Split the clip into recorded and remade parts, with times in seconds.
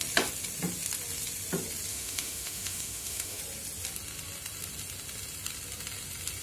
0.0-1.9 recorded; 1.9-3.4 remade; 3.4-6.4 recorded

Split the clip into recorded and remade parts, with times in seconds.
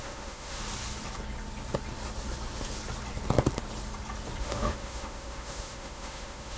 0.0-0.6 remade; 0.6-4.4 recorded; 4.4-6.6 remade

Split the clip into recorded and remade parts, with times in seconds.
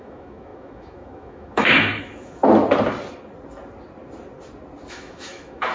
0.0-2.4 remade; 2.4-4.9 recorded; 4.9-5.7 remade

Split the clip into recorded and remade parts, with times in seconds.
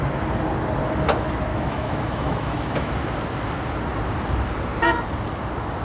0.0-1.5 recorded; 1.5-2.9 remade; 2.9-5.8 recorded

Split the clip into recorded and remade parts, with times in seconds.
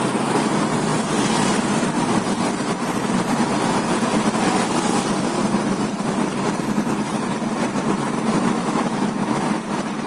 0.0-8.6 recorded; 8.6-9.4 remade; 9.4-10.1 recorded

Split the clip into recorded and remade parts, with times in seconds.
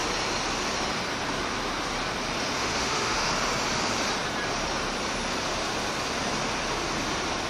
0.0-2.6 recorded; 2.6-3.3 remade; 3.3-7.5 recorded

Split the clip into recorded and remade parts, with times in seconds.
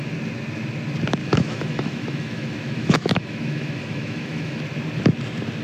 0.0-1.2 recorded; 1.2-4.6 remade; 4.6-5.6 recorded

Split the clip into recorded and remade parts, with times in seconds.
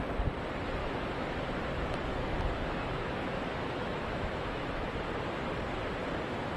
0.0-0.8 recorded; 0.8-1.4 remade; 1.4-2.1 recorded; 2.1-4.9 remade; 4.9-6.6 recorded